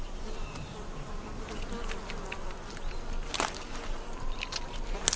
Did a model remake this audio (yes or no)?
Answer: no